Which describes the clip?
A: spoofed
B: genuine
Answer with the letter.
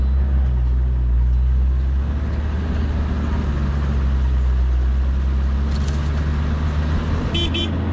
B